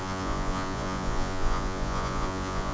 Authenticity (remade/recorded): remade